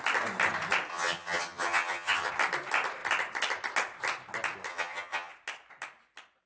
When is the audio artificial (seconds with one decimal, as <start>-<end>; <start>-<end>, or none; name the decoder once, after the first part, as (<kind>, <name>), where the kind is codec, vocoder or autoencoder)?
0.9-2.3 (vocoder, HiFi-GAN); 4.7-5.3